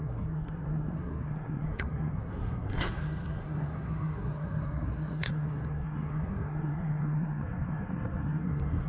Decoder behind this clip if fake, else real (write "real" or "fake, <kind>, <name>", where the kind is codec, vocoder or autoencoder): fake, codec, SNAC